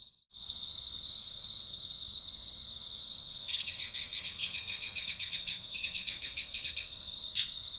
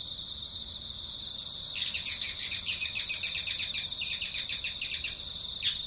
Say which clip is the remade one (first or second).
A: first